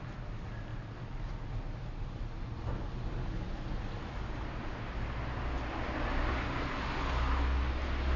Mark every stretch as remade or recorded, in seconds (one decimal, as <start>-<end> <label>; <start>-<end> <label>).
0.0-8.2 recorded